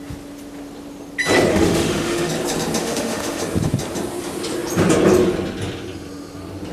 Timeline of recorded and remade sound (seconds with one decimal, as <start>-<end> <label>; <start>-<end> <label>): 0.0-1.5 recorded; 1.5-2.3 remade; 2.3-2.8 recorded; 2.8-3.4 remade; 3.4-6.7 recorded